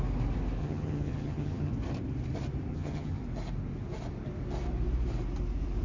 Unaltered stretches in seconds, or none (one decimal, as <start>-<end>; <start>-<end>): 0.0-0.6; 1.7-2.7; 3.2-5.8